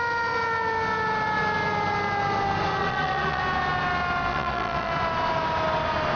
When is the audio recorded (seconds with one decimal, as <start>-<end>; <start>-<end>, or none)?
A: 0.0-2.8; 3.4-4.3; 4.9-6.2